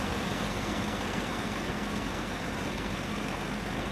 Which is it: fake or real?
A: fake